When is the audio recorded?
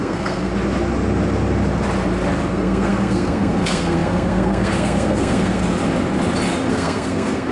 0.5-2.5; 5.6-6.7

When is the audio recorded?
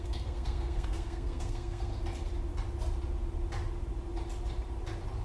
1.9-5.2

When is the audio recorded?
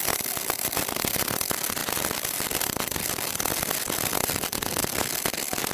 0.0-5.7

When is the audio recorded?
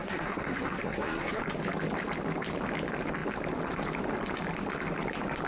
1.4-5.5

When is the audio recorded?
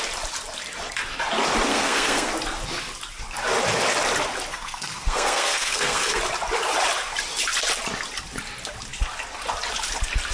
0.0-1.7; 2.3-4.5; 6.2-10.3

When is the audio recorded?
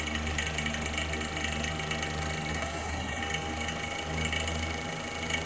0.0-2.5; 3.2-5.5